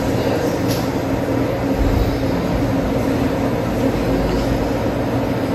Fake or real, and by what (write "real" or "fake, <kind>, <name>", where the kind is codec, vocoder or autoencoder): real